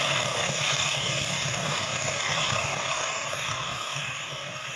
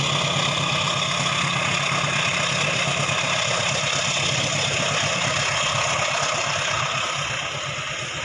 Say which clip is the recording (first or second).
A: second